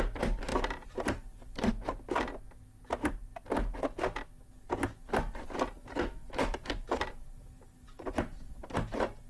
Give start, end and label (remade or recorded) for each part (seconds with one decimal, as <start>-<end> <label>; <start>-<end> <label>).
0.0-0.5 recorded; 0.5-1.7 remade; 1.7-5.8 recorded; 5.8-9.3 remade